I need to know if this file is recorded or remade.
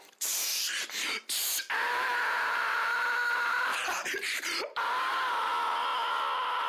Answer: remade